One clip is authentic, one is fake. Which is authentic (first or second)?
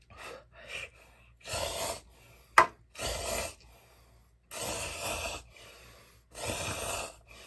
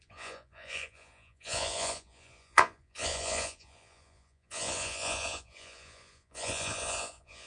first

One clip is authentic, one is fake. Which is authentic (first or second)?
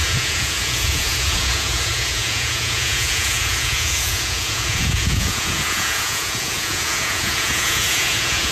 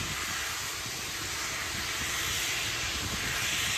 second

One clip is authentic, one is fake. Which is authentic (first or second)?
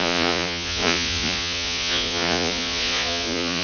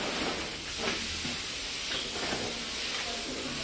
second